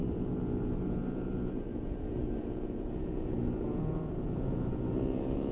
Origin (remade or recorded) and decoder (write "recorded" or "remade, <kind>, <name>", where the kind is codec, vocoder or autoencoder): remade, vocoder, Vocos